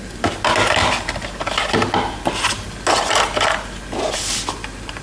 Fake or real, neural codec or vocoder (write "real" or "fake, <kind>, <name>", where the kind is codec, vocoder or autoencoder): real